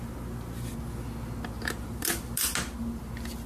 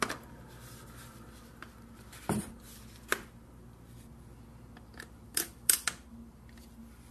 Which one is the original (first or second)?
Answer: first